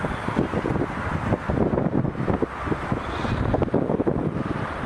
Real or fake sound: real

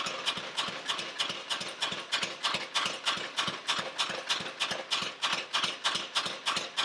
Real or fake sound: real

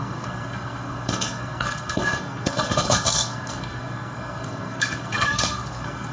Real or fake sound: fake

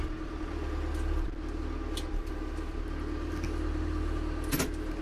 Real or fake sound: real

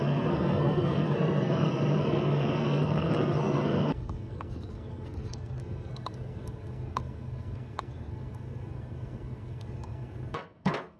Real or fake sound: fake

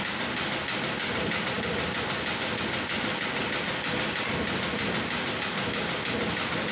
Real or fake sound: real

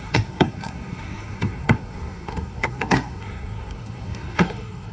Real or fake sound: fake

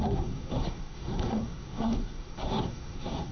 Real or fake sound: fake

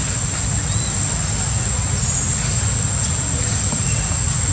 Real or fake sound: real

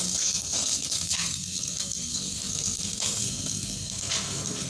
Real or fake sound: fake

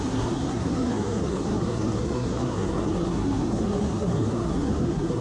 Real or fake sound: fake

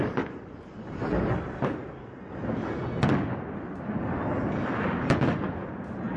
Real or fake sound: real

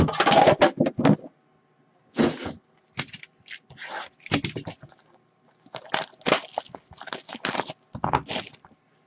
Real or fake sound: real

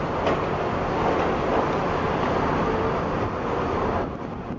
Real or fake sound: real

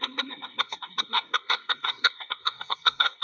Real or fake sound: fake